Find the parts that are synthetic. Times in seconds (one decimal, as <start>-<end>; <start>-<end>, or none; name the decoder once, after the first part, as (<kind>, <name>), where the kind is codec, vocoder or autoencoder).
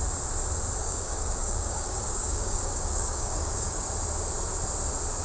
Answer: 0.8-3.9 (codec, DAC)